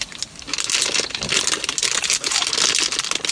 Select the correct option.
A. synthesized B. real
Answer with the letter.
B